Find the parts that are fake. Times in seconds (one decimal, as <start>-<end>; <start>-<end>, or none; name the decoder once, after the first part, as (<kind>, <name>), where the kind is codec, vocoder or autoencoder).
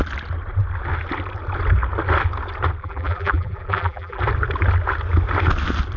2.8-4.2 (vocoder, BigVGAN v2)